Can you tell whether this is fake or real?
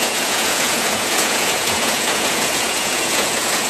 fake